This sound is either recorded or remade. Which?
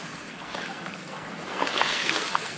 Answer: remade